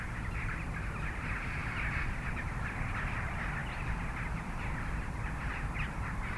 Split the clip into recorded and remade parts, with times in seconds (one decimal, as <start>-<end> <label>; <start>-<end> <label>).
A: 0.0-6.4 recorded